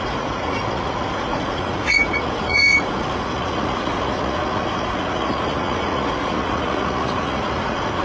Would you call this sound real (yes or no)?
no